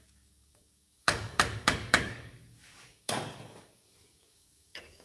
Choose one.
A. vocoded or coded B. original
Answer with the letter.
A